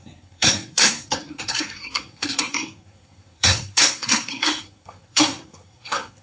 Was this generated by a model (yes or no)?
yes